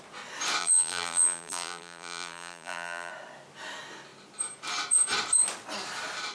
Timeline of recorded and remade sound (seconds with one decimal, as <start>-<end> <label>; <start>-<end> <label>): 0.0-0.6 recorded; 0.6-3.1 remade; 3.1-6.3 recorded